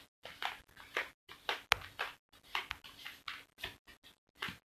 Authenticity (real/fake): real